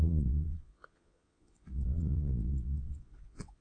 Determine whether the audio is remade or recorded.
remade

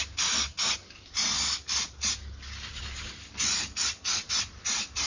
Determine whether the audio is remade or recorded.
recorded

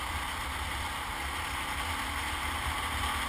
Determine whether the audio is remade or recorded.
recorded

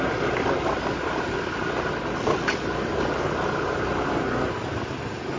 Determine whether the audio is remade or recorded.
recorded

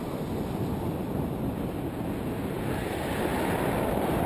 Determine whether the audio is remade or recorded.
recorded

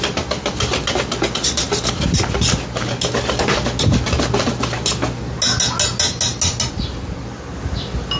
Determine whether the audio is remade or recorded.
recorded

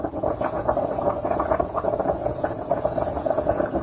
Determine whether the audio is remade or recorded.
remade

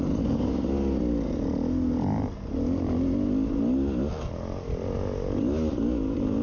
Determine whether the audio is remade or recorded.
recorded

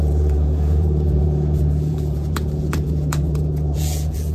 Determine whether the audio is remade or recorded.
remade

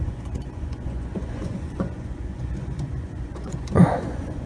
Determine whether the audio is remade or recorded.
remade